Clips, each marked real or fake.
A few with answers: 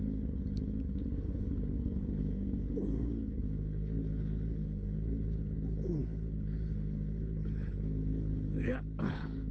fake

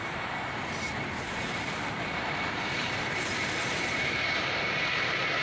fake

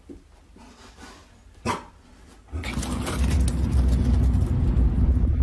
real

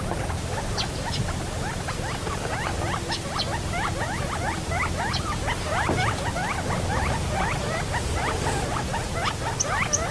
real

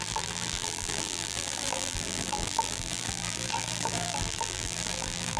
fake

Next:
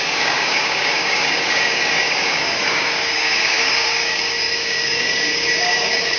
fake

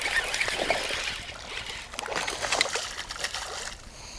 real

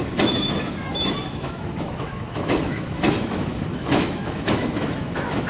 fake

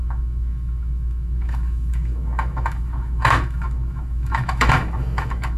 fake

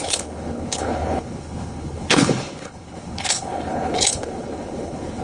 fake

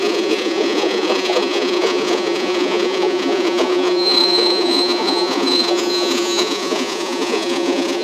fake